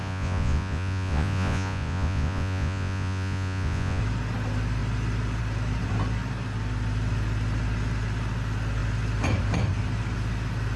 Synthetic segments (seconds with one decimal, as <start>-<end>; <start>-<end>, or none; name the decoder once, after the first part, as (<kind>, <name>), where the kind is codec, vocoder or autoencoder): 0.0-4.0 (vocoder, Vocos)